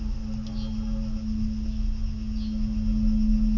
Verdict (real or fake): real